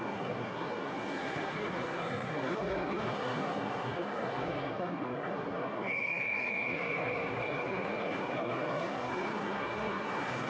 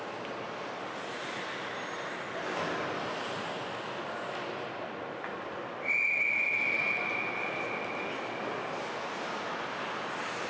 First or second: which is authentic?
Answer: second